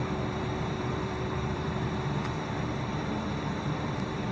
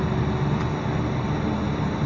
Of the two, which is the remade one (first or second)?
first